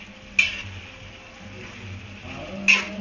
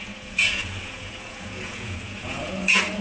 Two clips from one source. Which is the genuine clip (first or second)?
first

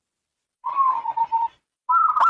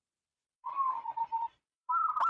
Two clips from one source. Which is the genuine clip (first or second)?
first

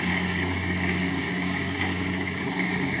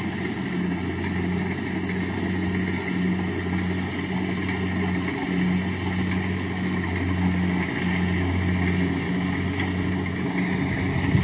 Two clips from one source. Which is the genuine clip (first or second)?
second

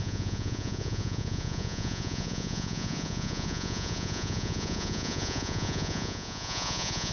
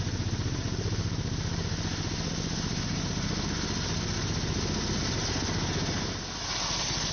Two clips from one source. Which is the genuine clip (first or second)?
second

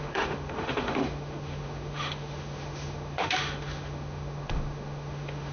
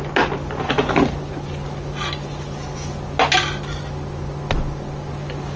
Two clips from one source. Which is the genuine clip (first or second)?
second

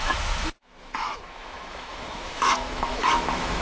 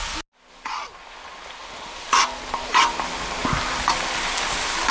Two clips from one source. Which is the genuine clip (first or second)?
second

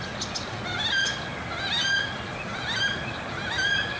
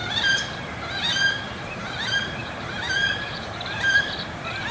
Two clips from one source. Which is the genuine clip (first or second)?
first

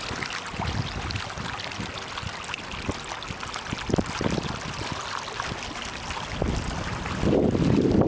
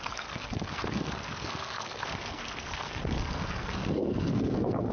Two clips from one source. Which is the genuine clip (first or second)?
first